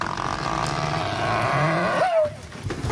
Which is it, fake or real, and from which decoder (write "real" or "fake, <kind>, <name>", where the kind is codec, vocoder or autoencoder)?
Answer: real